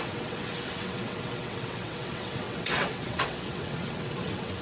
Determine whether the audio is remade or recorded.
remade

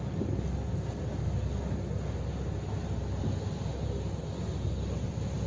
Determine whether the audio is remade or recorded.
recorded